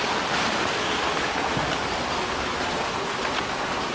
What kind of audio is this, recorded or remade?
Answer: recorded